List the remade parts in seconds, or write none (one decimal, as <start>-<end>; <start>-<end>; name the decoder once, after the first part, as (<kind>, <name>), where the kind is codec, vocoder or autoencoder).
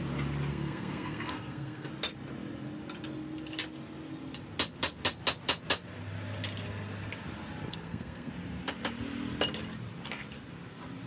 0.5-1.9 (codec, SNAC); 7.7-8.3